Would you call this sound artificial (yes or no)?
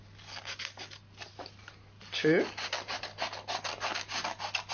no